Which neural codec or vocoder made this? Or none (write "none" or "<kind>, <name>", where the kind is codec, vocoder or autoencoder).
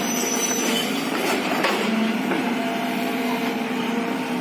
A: vocoder, BigVGAN v2